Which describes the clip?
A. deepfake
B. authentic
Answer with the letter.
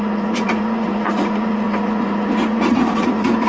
A